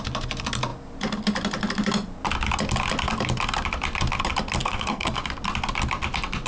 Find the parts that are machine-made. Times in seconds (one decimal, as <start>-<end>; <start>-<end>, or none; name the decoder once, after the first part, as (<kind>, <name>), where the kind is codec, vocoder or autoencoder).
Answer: 4.6-5.2 (codec, SNAC)